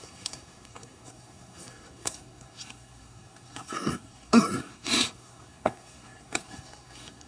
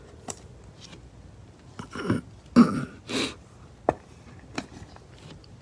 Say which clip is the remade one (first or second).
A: first